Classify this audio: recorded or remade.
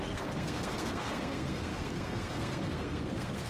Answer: remade